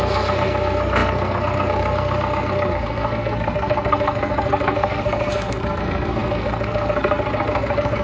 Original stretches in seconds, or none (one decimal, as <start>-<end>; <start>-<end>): none